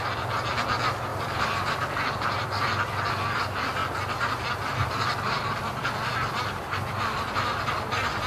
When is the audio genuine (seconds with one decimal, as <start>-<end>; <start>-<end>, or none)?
0.0-8.3